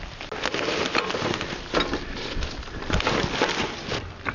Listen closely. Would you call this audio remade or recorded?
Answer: recorded